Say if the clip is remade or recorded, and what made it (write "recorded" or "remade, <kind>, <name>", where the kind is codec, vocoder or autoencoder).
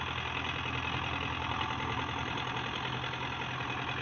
recorded